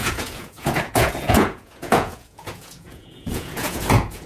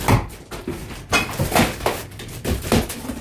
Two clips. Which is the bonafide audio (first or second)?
second